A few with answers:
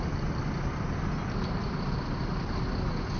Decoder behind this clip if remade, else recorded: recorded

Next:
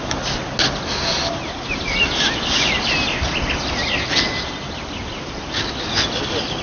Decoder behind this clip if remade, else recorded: recorded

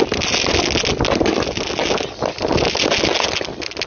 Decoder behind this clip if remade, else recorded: recorded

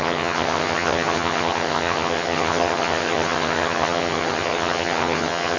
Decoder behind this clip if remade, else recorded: remade, vocoder, HiFi-GAN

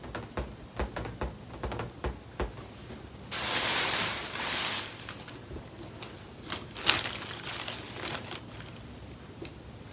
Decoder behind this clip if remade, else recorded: recorded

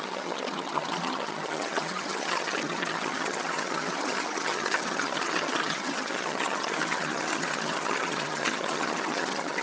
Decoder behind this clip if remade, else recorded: remade, vocoder, HiFi-GAN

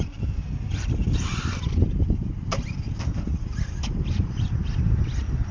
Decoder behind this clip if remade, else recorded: recorded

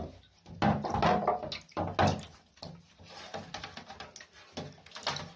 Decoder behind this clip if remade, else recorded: recorded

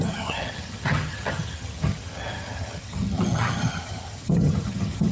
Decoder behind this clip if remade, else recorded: remade, vocoder, HiFi-GAN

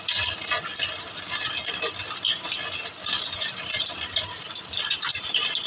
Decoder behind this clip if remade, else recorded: recorded